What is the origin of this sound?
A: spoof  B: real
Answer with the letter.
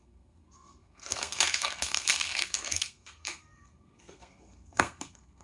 A